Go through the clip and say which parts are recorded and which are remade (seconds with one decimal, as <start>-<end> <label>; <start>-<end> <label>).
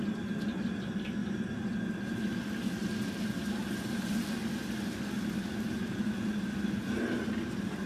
0.0-7.9 recorded